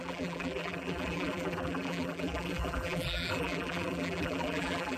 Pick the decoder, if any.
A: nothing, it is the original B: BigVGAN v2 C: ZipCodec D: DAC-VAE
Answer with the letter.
B